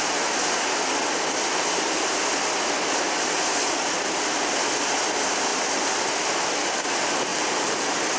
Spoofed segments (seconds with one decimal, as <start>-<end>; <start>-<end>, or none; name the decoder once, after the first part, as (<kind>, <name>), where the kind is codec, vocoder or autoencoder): 5.5-6.2 (vocoder, BigVGAN v2); 7.3-8.2